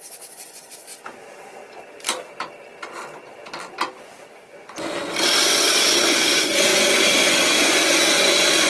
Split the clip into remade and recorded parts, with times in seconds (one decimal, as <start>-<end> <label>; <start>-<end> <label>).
0.0-0.9 remade; 0.9-4.3 recorded; 4.3-8.7 remade